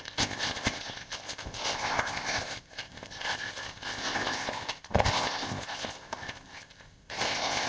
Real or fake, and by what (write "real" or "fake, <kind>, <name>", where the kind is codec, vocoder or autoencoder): fake, codec, ZipCodec